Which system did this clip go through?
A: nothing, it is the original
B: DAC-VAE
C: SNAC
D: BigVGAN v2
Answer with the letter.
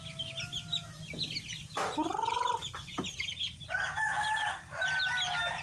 A